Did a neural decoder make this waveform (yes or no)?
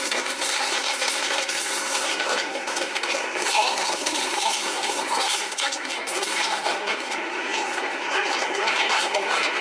yes